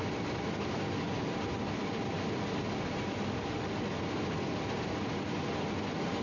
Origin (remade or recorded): recorded